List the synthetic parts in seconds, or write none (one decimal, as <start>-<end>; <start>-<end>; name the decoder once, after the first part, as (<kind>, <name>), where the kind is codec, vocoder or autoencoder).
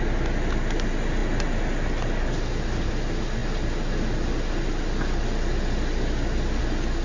none